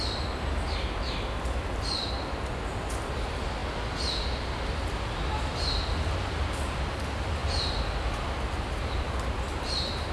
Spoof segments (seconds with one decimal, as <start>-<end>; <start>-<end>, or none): 9.5-10.1